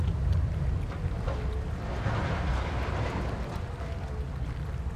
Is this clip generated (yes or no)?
no